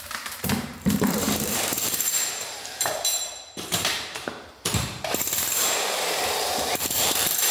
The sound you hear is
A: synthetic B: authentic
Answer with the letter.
A